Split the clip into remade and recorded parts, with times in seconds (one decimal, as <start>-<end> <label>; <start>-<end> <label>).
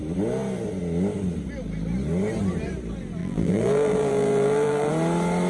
0.0-3.2 recorded; 3.2-4.9 remade; 4.9-5.5 recorded